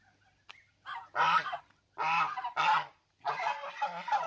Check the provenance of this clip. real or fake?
real